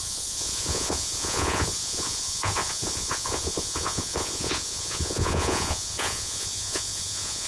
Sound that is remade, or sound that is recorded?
remade